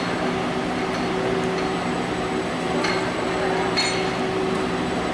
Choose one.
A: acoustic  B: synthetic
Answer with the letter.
A